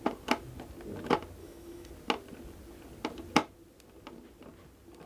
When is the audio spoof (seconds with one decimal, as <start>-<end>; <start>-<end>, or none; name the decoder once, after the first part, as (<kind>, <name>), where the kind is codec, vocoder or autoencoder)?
1.4-1.9 (autoencoder, DAC-VAE)